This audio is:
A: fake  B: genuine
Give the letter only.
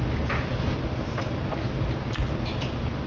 B